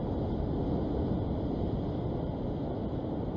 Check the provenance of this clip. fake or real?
real